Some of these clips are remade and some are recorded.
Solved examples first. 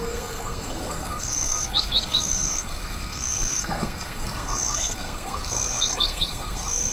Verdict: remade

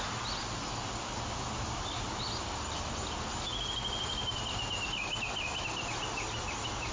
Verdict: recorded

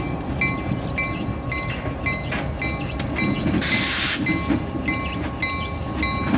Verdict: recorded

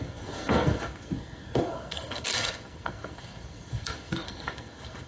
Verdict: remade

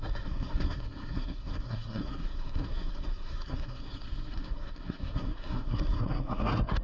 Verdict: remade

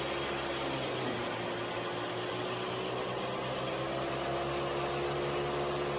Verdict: recorded